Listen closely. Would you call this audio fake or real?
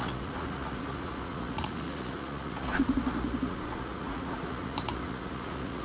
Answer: fake